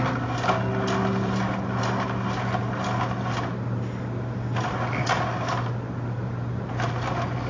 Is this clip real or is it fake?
real